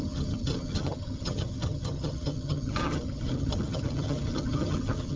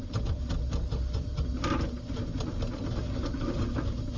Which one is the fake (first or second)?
first